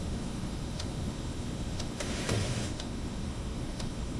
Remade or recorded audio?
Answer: remade